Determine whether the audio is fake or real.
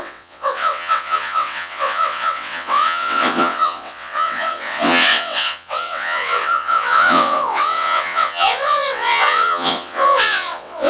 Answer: fake